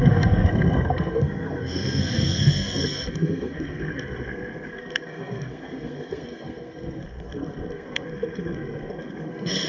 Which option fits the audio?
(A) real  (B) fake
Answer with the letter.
B